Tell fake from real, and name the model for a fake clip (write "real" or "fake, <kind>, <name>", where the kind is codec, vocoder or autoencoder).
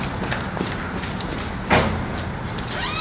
real